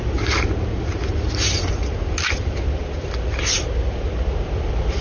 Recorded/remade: recorded